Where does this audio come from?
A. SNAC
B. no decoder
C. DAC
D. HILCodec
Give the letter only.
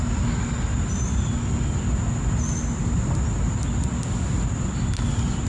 B